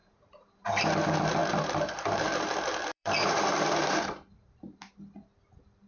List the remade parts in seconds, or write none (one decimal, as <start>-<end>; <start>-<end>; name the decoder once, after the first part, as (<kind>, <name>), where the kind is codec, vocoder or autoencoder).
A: 0.0-0.7 (vocoder, BigVGAN v2); 1.4-4.9